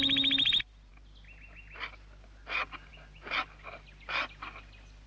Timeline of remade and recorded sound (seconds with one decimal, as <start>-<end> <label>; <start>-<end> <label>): 0.0-5.1 recorded